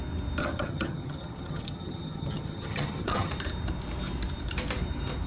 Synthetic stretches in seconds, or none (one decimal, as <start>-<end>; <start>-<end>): 0.4-3.3